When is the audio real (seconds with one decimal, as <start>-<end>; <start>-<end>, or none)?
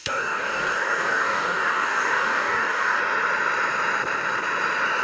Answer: 3.0-5.0